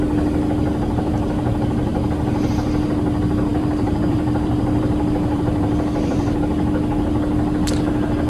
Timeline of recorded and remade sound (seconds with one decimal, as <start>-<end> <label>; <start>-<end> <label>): 0.0-3.5 recorded; 3.5-6.4 remade; 6.4-8.3 recorded